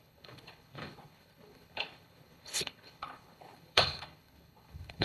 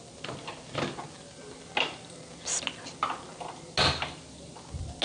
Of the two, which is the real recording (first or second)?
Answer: second